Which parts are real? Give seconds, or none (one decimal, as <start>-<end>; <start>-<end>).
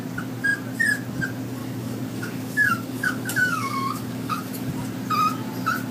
0.0-1.6; 4.7-5.9